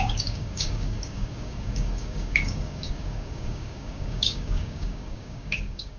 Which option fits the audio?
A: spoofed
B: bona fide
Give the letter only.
A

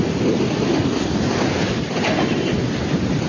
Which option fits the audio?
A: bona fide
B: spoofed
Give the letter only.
A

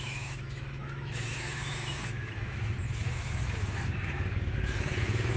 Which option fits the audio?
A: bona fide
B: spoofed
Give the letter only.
B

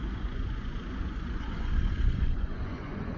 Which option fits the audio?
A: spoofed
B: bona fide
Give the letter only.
A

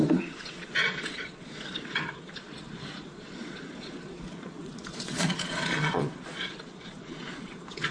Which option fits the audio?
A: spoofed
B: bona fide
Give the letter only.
A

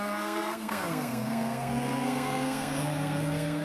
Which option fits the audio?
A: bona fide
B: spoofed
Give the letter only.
B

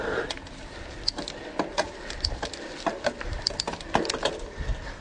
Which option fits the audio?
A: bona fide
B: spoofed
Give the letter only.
A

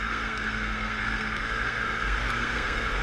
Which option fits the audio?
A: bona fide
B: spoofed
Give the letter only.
B